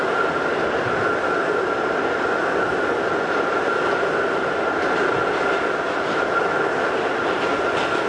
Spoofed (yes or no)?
no